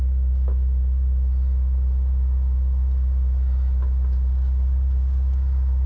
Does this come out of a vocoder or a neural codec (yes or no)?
no